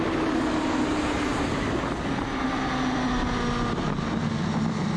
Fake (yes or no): no